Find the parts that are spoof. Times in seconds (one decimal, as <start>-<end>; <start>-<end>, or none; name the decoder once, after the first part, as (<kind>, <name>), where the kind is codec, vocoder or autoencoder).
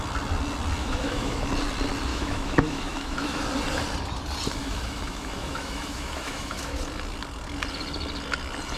0.8-1.5 (autoencoder, DAC-VAE); 2.1-3.4; 4.6-6.8